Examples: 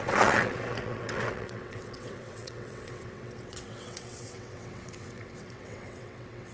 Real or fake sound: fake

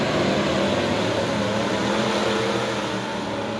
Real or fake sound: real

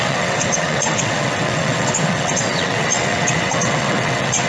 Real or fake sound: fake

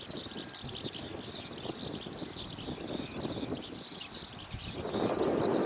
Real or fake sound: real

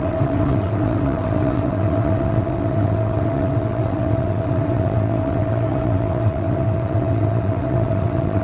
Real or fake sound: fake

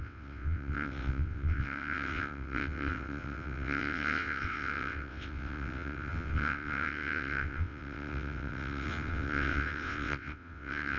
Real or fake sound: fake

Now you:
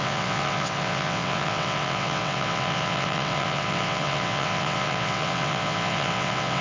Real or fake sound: fake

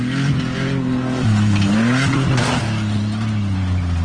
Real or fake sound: real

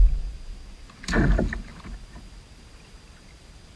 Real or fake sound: real